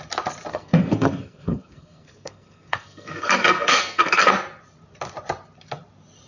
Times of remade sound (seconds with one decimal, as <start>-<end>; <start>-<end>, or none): 0.5-4.3